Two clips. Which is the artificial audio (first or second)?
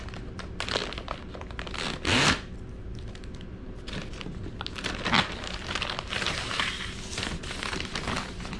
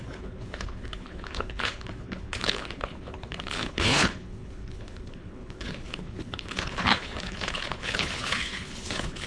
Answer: second